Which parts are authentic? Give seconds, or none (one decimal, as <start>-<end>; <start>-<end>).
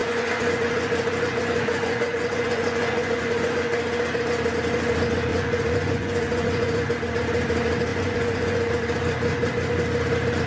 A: 3.7-5.3; 6.9-7.9; 8.7-10.5